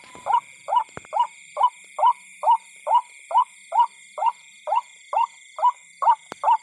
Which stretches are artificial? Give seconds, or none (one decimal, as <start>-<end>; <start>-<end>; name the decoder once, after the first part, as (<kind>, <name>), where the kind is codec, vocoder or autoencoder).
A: none